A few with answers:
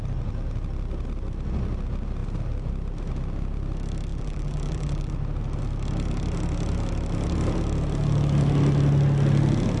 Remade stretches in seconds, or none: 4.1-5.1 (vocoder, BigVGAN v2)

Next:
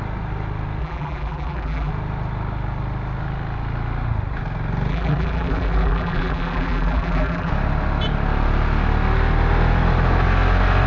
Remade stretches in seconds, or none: 0.8-1.9 (vocoder, BigVGAN v2); 4.9-7.5

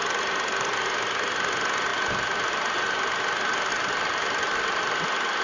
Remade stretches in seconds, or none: 3.7-4.8 (vocoder, BigVGAN v2)

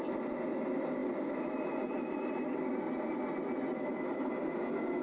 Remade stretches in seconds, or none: 1.0-2.3 (vocoder, BigVGAN v2)

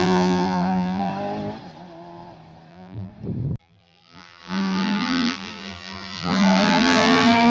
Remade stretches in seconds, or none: 0.0-1.1 (vocoder, BigVGAN v2); 2.7-3.1; 3.6-7.5

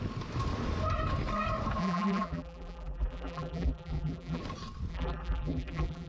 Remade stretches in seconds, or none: 1.8-4.4 (vocoder, BigVGAN v2); 4.9-6.1

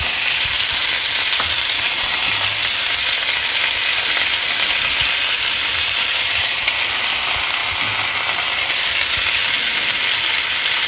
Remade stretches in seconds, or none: 0.0-7.6 (vocoder, BigVGAN v2); 8.7-9.4; 10.3-10.9

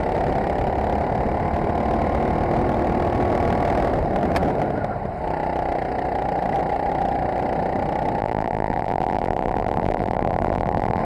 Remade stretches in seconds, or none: 8.2-11.0 (vocoder, BigVGAN v2)